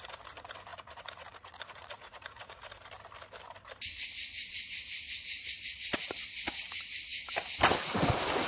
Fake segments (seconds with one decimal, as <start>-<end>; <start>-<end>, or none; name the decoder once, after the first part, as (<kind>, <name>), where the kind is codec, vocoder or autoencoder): 0.7-2.6 (vocoder, Vocos)